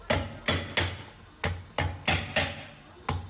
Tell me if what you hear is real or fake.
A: real